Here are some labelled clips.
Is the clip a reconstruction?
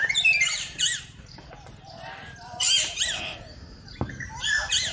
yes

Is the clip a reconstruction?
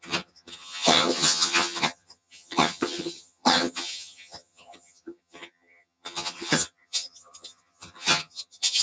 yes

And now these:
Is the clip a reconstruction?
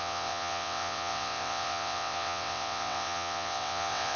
yes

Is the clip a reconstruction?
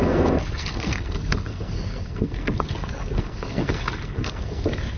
yes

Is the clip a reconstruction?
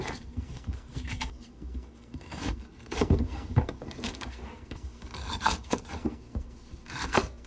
yes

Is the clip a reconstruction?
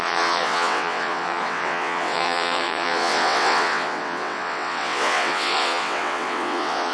yes